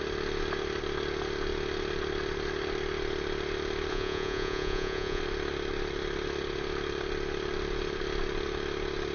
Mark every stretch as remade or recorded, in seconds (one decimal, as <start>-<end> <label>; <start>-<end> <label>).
0.0-3.9 recorded; 3.9-5.2 remade; 5.2-9.1 recorded